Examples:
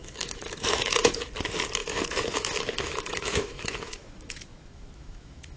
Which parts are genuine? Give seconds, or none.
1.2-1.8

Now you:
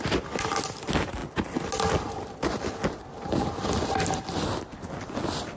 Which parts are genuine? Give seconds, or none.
0.0-5.6

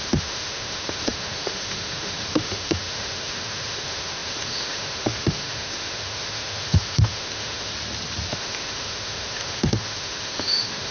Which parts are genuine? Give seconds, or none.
7.7-8.3

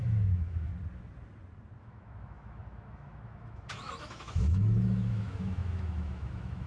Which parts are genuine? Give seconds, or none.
0.7-1.8

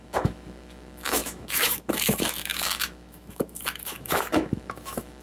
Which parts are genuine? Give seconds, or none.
none

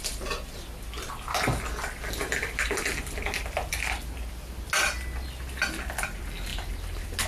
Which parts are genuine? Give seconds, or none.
0.0-7.3

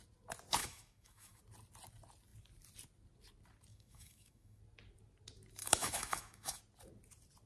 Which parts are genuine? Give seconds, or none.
0.0-0.6; 1.4-3.7; 4.6-5.6; 6.6-7.5

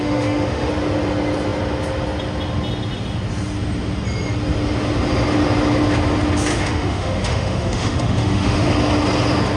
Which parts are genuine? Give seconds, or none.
0.7-6.5; 8.7-9.6